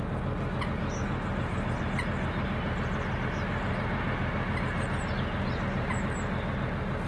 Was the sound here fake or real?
real